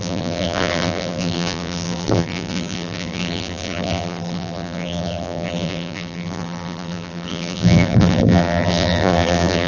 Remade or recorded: remade